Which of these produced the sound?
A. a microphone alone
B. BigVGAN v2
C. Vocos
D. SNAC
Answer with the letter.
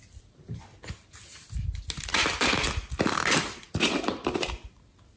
A